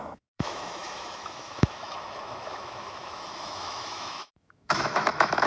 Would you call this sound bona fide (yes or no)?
no